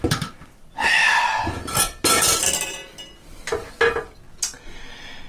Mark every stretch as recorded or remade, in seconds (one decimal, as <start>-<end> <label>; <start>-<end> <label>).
0.0-5.3 recorded